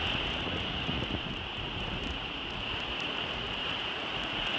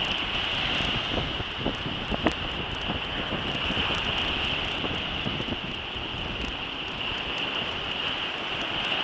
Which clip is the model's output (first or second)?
first